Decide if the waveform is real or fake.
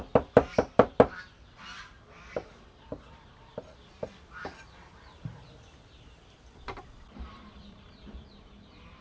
fake